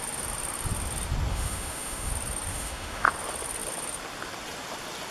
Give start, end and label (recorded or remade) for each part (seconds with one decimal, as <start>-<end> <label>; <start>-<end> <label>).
0.0-1.3 recorded; 1.3-2.1 remade; 2.1-2.5 recorded; 2.5-3.1 remade; 3.1-5.1 recorded